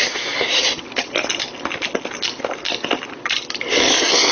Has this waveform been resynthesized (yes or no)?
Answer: no